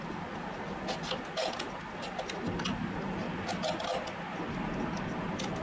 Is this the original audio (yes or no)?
yes